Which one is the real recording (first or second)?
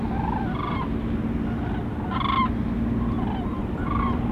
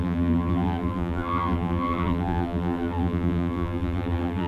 first